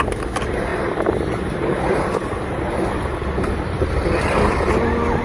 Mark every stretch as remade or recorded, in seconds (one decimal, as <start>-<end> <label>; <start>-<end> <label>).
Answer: 0.0-5.2 recorded